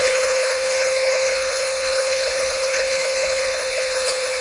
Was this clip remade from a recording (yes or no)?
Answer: yes